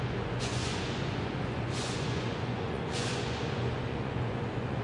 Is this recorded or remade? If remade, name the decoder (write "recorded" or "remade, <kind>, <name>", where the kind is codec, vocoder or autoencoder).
remade, vocoder, Vocos